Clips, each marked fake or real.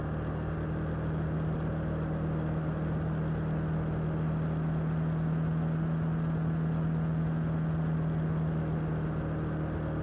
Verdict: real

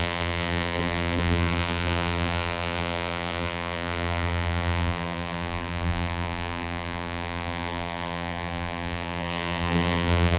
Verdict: fake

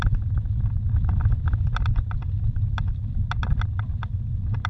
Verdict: real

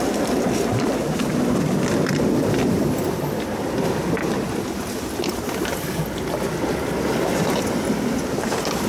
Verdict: real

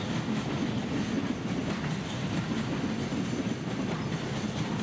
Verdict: real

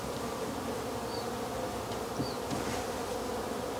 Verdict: fake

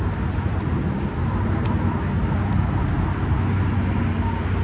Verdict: real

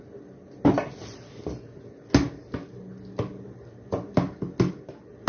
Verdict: real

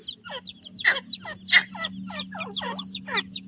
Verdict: real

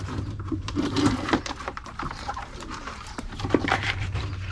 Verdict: fake